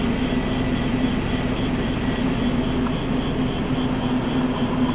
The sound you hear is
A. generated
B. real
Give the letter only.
B